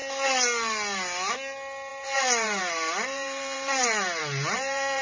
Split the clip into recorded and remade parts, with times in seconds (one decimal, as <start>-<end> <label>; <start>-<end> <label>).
0.0-1.9 recorded; 1.9-5.0 remade

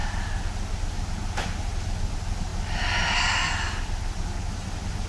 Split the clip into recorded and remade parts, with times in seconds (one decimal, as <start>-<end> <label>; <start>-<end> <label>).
0.0-5.1 recorded

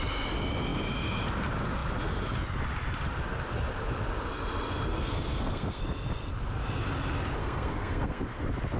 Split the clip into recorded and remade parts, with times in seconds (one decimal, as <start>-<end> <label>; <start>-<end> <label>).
0.0-4.9 recorded; 4.9-5.8 remade; 5.8-7.4 recorded; 7.4-8.4 remade; 8.4-8.8 recorded

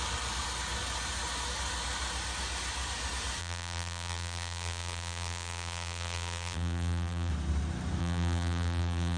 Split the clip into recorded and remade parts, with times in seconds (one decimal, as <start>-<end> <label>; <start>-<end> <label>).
0.0-3.4 recorded; 3.4-7.3 remade; 7.3-8.0 recorded; 8.0-9.2 remade

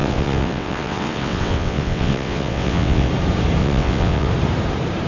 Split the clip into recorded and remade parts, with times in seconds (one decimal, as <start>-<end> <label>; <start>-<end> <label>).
0.0-3.1 remade; 3.1-3.6 recorded; 3.6-4.3 remade; 4.3-5.1 recorded

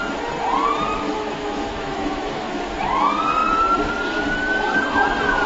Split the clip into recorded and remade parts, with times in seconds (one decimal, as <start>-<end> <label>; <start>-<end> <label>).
0.0-0.9 recorded; 0.9-2.6 remade; 2.6-5.5 recorded

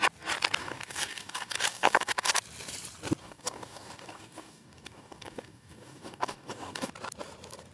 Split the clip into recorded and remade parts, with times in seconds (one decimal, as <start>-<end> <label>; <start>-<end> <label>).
0.0-0.6 recorded; 0.6-2.3 remade; 2.3-3.2 recorded; 3.2-6.9 remade; 6.9-7.7 recorded